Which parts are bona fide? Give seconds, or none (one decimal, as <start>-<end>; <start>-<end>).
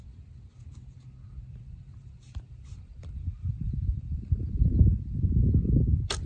0.0-1.5; 5.3-6.3